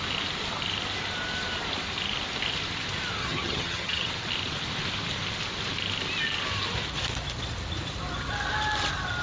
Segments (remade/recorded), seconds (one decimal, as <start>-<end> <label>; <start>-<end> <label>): 0.0-3.2 recorded; 3.2-4.1 remade; 4.1-9.2 recorded